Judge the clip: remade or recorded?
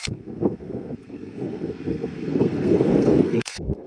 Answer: remade